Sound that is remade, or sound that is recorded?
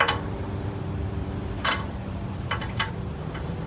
remade